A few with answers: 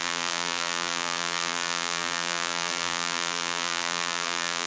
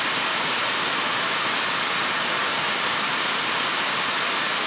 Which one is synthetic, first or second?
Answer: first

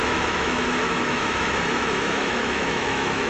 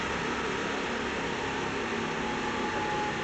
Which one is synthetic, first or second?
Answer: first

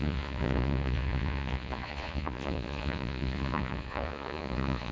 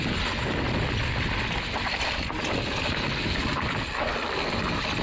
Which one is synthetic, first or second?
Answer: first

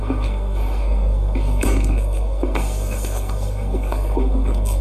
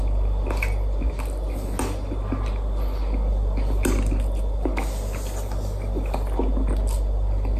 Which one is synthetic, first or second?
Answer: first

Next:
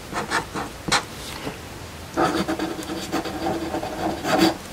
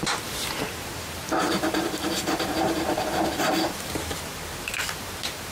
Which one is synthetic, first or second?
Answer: second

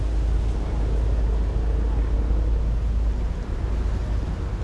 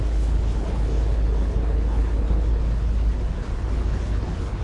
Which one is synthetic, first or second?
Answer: second